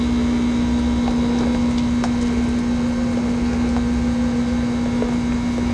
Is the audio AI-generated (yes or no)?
no